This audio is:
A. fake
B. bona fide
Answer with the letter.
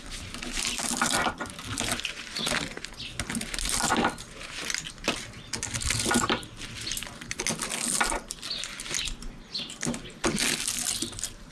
B